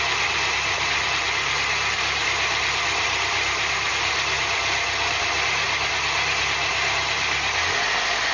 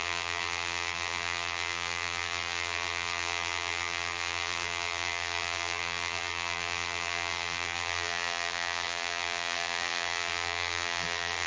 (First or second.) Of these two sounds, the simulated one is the second